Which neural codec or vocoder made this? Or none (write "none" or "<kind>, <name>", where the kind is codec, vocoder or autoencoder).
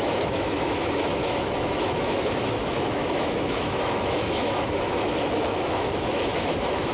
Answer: autoencoder, DAC-VAE